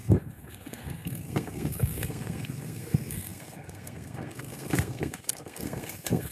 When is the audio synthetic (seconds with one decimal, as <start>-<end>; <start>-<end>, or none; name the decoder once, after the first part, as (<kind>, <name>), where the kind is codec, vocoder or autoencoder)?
0.0-6.3 (codec, SNAC)